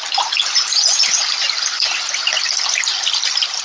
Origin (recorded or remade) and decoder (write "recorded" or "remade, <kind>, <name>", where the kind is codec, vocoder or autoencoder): recorded